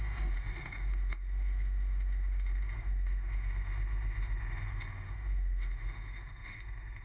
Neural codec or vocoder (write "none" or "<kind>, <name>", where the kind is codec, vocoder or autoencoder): autoencoder, DAC-VAE